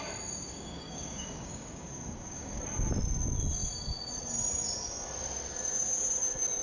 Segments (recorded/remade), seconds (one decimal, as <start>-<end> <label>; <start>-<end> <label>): 0.0-0.5 recorded; 0.5-2.6 remade; 2.6-6.6 recorded